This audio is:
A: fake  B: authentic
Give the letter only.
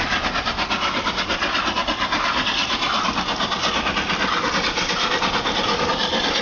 B